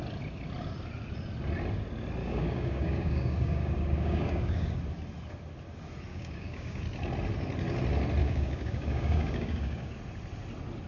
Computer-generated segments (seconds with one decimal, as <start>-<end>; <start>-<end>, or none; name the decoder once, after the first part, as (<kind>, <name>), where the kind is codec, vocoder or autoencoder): 2.2-4.8 (codec, DAC); 6.1-6.8; 8.2-9.9